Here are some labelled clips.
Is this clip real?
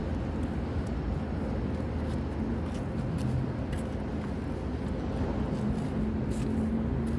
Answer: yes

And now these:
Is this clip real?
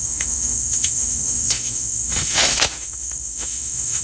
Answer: no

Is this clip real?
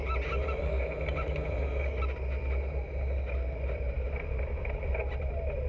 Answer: yes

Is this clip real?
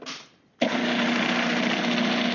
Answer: yes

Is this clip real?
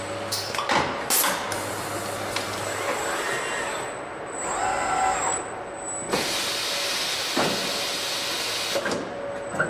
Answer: yes